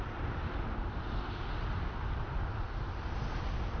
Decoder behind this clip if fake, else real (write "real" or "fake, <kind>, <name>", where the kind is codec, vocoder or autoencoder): fake, vocoder, BigVGAN v2